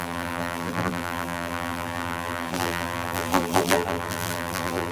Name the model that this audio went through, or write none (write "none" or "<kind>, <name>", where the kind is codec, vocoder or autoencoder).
vocoder, BigVGAN v2